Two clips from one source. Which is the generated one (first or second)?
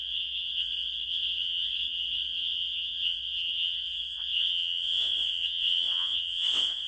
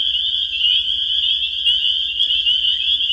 first